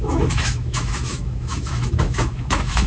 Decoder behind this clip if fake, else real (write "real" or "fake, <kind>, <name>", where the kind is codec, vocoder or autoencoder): fake, autoencoder, DAC-VAE